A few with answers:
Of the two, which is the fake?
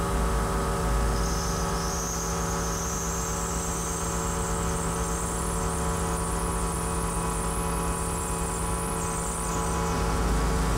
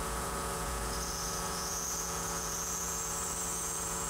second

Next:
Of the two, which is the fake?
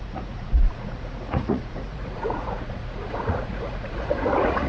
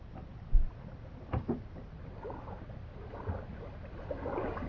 first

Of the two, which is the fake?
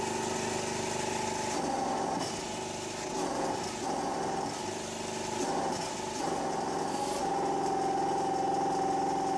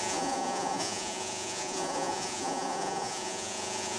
second